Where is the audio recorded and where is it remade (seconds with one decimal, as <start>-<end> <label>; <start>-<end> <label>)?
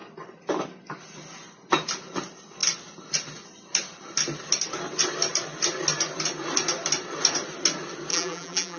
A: 0.0-8.1 recorded; 8.1-8.8 remade